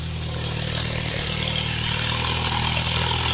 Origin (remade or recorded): recorded